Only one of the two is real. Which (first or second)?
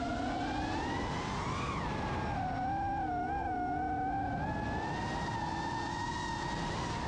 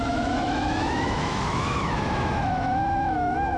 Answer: first